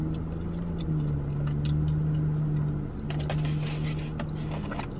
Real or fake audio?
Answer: real